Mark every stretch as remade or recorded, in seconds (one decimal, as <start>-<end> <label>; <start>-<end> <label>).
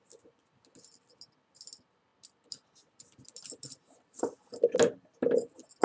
0.0-5.8 recorded